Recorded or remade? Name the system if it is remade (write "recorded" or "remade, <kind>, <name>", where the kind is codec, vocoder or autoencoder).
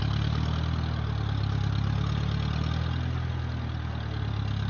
recorded